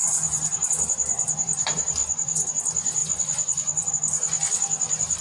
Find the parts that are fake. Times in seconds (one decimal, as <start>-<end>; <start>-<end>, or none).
2.0-2.5; 3.0-3.9